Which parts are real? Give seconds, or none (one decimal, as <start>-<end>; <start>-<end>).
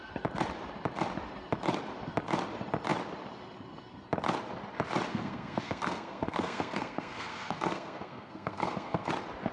0.0-5.1; 9.1-9.5